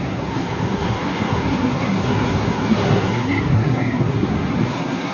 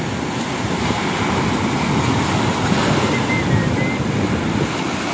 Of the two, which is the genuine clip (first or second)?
second